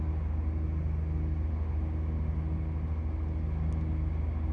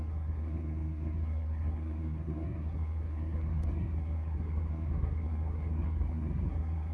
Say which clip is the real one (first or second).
first